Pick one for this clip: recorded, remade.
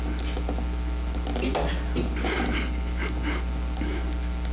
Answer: recorded